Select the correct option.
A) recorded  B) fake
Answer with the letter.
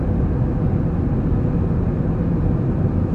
A